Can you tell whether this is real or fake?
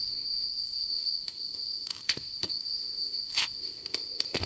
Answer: fake